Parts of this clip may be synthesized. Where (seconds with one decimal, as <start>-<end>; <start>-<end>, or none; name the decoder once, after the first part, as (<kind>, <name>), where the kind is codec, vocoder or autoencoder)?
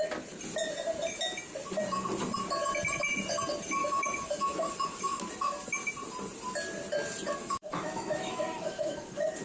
3.8-5.2 (autoencoder, DAC-VAE); 7.4-9.4